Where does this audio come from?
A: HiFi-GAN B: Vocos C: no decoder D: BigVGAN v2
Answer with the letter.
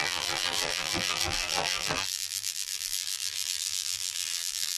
D